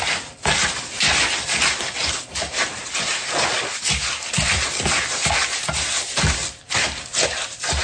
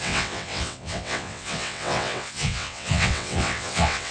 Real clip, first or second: first